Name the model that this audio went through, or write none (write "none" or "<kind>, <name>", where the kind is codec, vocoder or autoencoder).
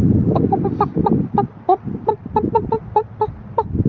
none